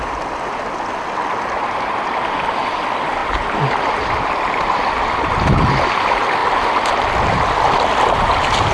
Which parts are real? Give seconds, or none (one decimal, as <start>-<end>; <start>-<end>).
0.0-8.7